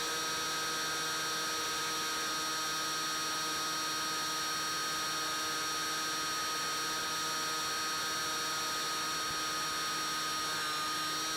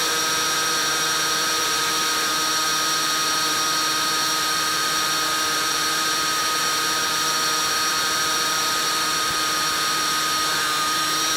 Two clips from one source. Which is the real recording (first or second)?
first